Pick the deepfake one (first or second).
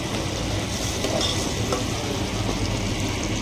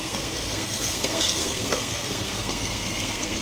second